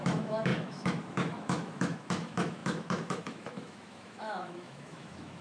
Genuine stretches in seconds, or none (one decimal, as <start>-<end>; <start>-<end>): none